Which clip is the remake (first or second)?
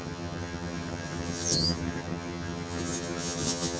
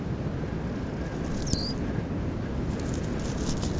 first